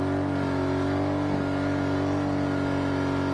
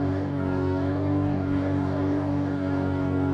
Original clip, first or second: first